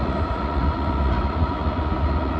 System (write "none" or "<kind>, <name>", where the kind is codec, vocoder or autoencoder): vocoder, Vocos